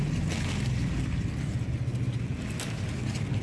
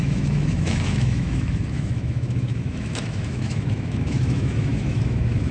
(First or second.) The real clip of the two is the first